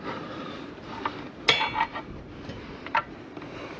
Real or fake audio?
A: real